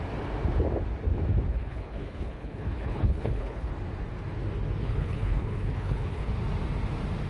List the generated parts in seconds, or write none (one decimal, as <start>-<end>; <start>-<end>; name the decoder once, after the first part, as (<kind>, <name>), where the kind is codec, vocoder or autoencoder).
1.5-3.7 (codec, HILCodec); 4.8-6.3